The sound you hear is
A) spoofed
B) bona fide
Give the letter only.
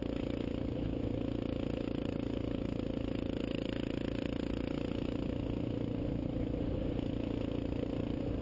B